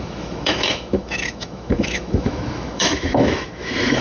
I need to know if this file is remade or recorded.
remade